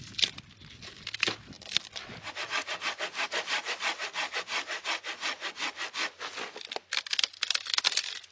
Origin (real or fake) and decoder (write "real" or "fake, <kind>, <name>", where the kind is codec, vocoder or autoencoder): real